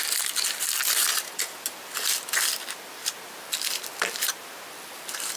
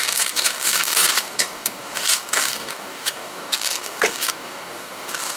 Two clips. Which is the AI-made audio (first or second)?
second